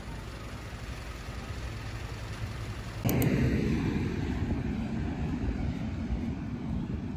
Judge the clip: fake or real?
real